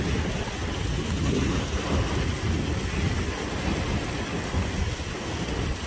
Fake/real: real